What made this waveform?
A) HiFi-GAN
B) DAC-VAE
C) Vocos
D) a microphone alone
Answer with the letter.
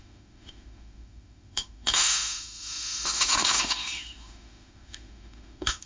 B